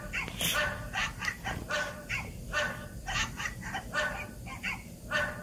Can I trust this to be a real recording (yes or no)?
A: no